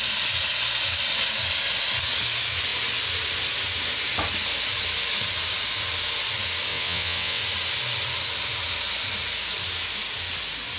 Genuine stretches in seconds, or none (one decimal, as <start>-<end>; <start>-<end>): 0.0-6.7; 7.4-10.8